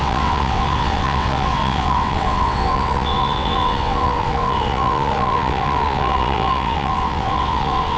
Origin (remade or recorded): remade